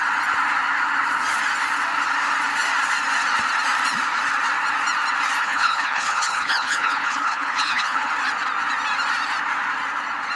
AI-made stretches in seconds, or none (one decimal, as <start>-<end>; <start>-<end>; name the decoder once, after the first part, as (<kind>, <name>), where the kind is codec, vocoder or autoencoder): 5.4-8.1 (codec, HILCodec)